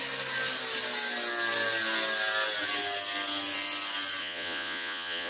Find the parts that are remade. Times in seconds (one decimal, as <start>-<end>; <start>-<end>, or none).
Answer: 4.2-5.3